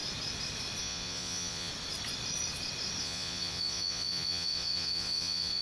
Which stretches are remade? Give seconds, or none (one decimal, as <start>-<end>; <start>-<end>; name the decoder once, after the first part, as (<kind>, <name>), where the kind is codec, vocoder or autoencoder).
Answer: 0.8-1.7 (vocoder, Vocos); 3.0-5.6